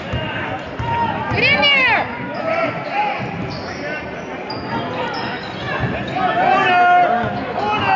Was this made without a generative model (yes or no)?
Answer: yes